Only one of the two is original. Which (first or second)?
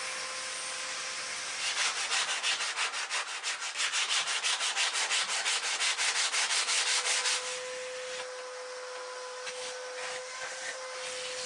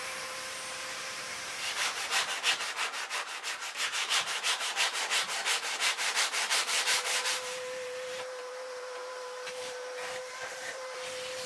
first